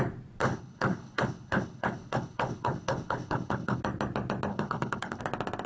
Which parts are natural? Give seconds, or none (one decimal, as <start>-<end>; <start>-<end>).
0.0-0.4; 3.8-4.5; 5.2-5.7